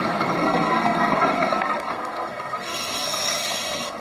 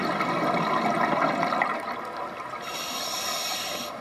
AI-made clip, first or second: first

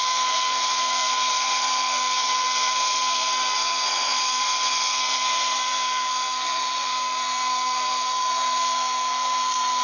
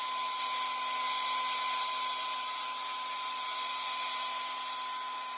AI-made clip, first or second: first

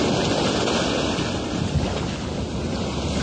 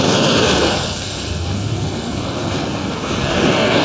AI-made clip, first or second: second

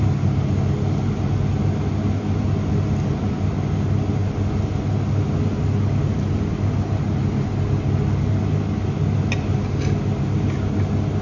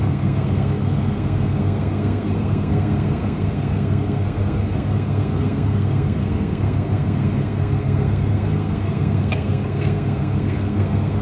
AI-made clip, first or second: second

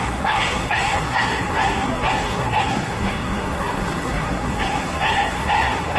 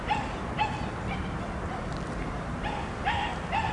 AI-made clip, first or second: first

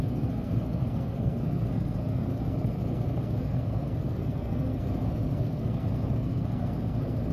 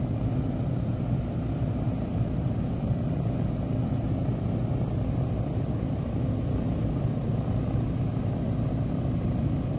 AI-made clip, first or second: first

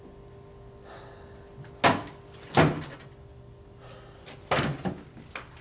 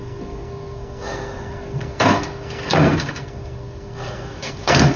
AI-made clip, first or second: second